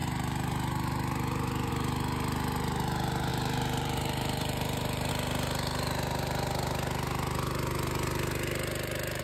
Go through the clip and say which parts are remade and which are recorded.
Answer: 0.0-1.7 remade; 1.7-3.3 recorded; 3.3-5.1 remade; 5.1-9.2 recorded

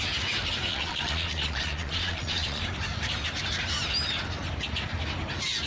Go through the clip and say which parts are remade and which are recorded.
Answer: 0.0-0.7 recorded; 0.7-2.6 remade; 2.6-5.7 recorded

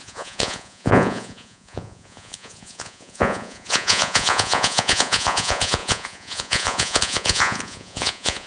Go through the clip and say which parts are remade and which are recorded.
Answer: 0.0-8.5 remade